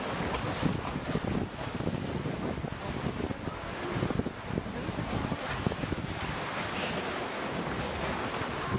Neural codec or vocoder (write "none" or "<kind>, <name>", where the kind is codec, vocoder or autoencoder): none